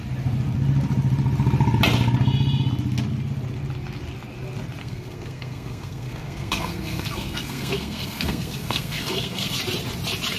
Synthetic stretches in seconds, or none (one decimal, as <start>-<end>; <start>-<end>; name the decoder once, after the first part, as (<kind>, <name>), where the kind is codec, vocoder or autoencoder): 4.8-9.6 (codec, SNAC)